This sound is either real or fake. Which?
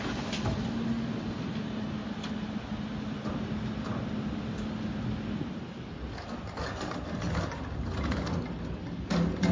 real